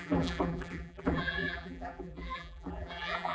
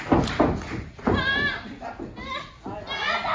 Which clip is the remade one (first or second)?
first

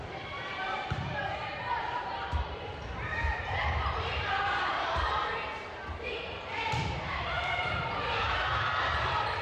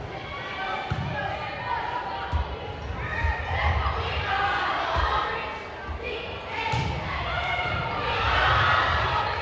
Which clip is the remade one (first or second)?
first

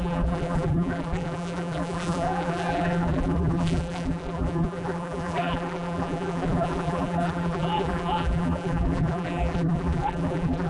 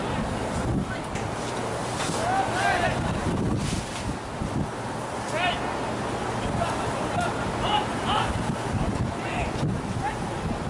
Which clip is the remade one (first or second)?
first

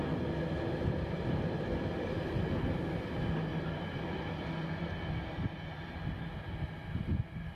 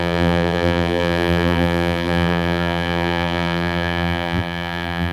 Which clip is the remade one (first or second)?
second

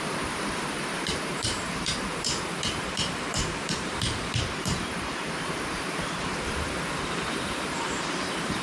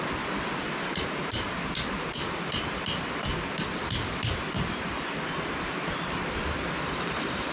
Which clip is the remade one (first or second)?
first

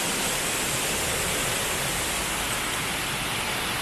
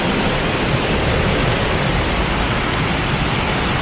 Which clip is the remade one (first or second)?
second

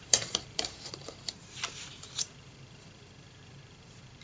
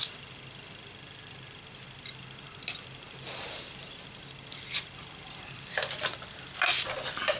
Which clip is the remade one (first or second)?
first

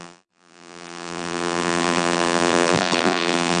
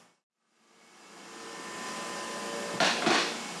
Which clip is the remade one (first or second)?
first